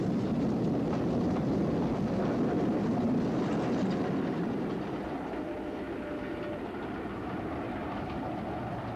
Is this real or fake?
real